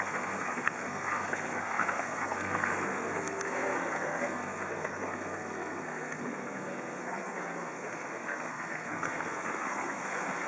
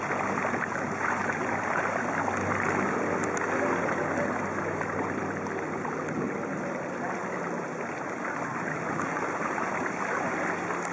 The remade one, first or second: first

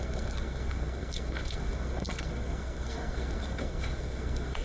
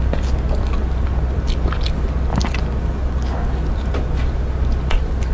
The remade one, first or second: first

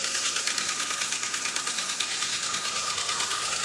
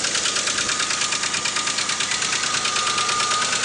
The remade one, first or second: first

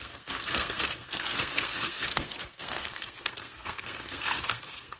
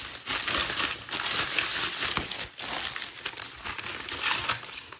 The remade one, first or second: first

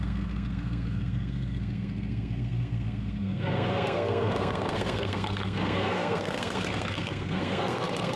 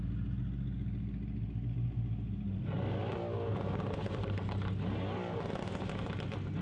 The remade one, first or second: first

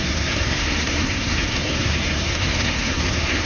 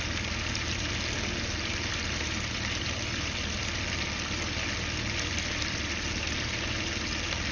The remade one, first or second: first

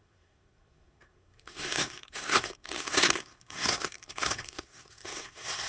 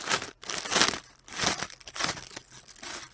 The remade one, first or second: first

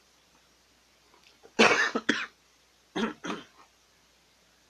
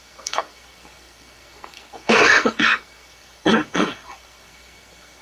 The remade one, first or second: second